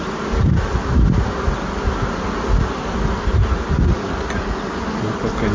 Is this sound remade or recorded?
recorded